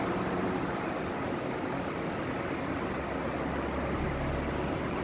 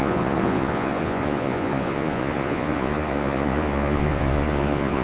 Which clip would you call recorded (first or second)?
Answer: first